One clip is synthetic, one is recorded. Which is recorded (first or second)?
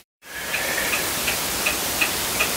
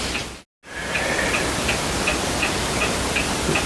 second